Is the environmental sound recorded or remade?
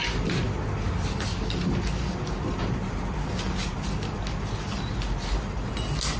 recorded